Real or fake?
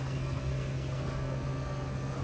fake